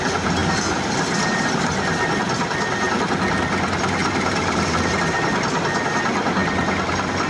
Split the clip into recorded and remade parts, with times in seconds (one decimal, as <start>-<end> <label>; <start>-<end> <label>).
0.0-4.0 recorded; 4.0-5.0 remade; 5.0-7.3 recorded